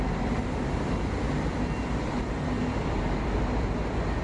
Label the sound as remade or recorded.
recorded